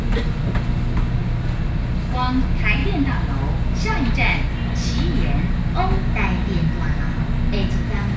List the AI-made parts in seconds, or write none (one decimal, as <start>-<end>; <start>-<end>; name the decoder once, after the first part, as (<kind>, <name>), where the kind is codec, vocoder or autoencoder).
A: none